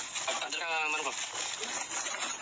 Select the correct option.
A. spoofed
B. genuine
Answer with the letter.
B